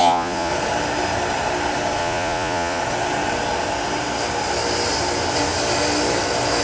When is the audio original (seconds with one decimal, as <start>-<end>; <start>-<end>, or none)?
0.5-2.0; 2.8-6.6